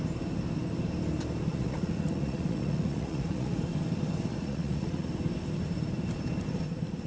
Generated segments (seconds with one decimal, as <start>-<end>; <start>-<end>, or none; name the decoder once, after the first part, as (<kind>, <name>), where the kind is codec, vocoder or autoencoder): 1.5-3.6 (vocoder, Vocos); 4.3-5.1